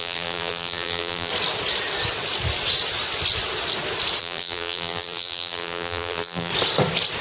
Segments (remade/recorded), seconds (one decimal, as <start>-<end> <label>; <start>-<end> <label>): 0.0-1.3 remade; 1.3-4.2 recorded; 4.2-6.5 remade; 6.5-7.2 recorded